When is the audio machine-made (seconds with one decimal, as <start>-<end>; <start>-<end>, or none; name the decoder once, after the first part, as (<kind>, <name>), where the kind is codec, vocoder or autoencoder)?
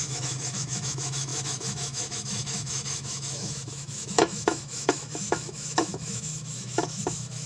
0.0-7.5 (autoencoder, DAC-VAE)